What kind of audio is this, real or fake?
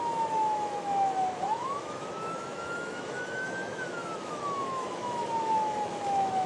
fake